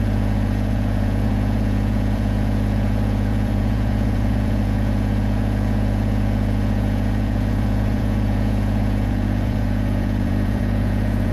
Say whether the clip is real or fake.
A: fake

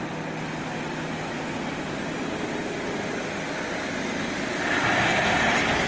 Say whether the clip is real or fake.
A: real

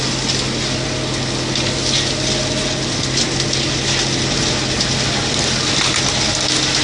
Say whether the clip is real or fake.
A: real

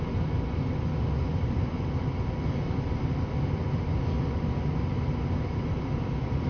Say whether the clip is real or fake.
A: real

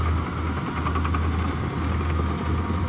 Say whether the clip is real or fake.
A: real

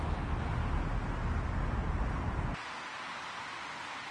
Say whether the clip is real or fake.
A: real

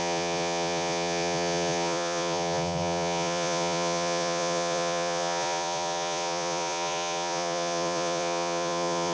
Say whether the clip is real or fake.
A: fake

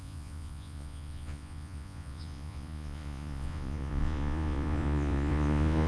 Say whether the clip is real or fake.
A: fake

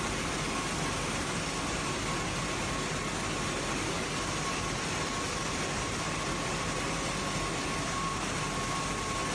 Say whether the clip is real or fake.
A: real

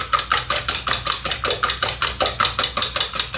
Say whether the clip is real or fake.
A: real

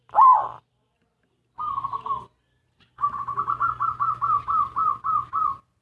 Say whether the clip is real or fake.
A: real